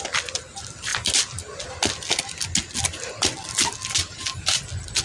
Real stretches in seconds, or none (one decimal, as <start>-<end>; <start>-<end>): 0.0-4.0; 4.6-5.0